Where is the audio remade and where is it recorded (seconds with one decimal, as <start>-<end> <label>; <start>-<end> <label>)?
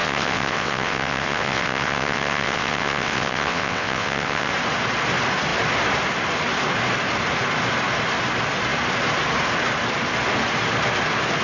0.0-4.5 remade; 4.5-11.4 recorded